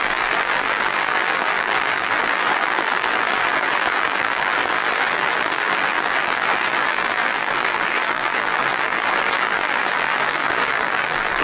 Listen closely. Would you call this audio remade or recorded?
remade